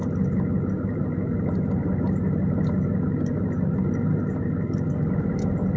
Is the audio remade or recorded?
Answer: recorded